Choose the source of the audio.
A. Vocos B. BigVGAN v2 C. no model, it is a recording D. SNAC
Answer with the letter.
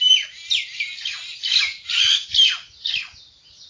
C